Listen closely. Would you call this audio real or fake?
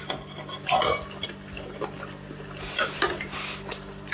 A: real